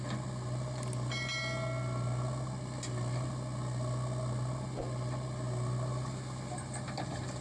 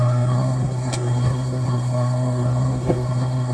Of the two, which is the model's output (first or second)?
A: second